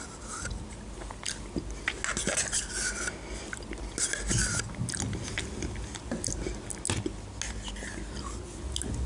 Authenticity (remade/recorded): recorded